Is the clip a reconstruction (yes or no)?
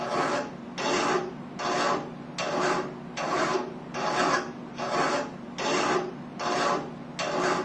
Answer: no